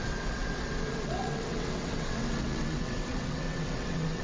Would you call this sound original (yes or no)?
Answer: no